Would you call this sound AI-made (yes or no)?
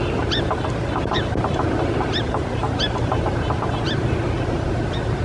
no